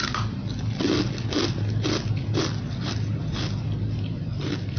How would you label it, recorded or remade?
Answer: recorded